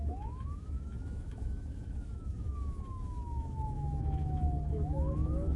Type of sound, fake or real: fake